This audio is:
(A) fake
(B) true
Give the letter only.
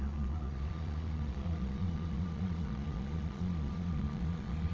A